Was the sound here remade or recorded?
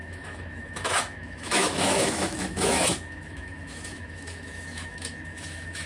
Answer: remade